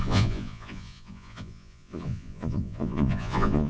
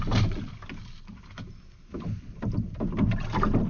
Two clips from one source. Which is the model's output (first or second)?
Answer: first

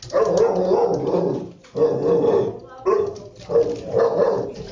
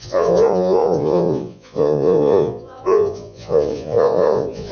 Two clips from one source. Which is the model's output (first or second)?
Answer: second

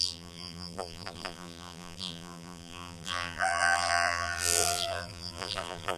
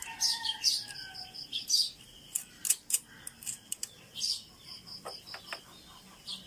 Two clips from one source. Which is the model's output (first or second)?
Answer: first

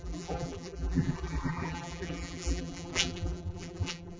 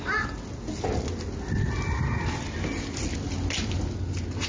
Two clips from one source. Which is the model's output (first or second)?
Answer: first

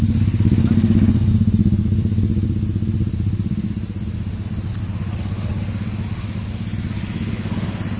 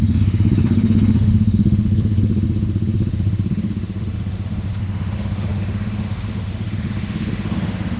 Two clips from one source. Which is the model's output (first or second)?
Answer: second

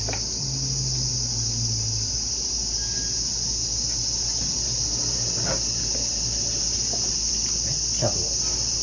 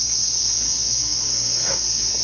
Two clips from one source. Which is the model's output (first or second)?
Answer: second